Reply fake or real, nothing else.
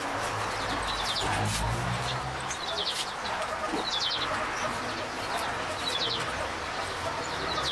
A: real